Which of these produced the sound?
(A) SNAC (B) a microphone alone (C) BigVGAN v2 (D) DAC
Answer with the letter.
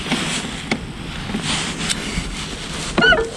B